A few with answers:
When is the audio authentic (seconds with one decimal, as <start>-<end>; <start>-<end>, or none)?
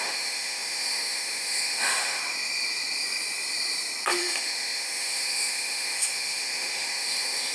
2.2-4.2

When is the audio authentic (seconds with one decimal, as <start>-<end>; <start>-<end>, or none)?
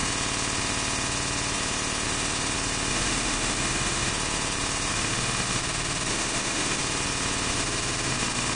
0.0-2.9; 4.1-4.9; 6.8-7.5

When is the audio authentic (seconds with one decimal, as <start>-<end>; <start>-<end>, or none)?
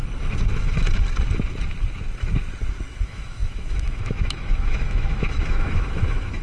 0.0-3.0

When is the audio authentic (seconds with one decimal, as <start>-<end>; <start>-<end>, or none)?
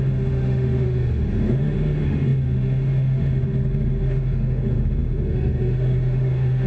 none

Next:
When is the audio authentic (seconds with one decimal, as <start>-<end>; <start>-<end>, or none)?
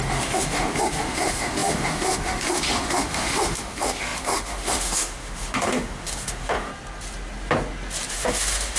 6.7-8.1